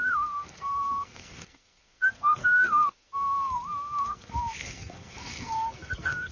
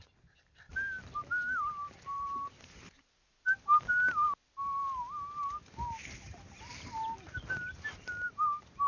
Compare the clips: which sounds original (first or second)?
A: second